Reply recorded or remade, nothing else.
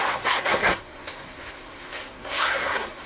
remade